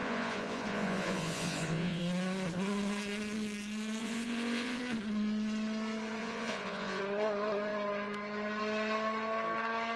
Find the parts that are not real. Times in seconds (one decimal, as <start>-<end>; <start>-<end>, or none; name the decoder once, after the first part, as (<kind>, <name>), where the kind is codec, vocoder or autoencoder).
0.0-2.0 (vocoder, Vocos); 4.0-4.8; 6.2-7.0